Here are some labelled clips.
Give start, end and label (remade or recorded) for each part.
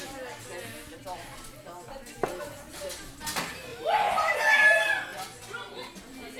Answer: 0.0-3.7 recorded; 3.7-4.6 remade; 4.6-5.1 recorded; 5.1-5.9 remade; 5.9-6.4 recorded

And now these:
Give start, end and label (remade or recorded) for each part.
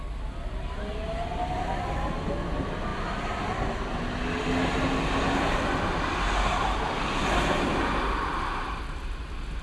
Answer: 0.0-9.6 recorded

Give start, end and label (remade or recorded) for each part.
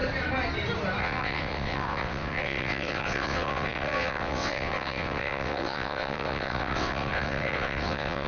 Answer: 0.0-1.0 recorded; 1.0-8.3 remade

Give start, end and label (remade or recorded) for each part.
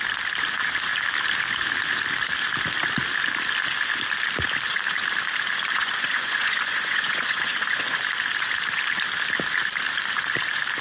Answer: 0.0-5.7 recorded; 5.7-8.0 remade; 8.0-10.8 recorded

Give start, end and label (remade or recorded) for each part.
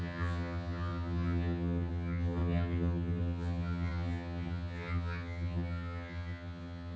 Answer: 0.0-7.0 remade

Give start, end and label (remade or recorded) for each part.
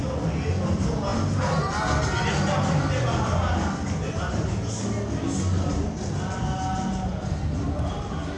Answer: 0.0-8.4 recorded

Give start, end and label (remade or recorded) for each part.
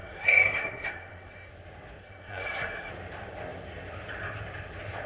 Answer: 0.0-1.5 remade; 1.5-2.0 recorded; 2.0-2.9 remade; 2.9-5.1 recorded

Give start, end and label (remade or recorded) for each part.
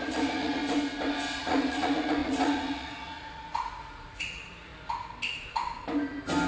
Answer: 0.0-0.6 remade; 0.6-1.4 recorded; 1.4-4.7 remade; 4.7-6.5 recorded